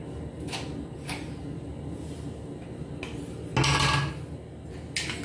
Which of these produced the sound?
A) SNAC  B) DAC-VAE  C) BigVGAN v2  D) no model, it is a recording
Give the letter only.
D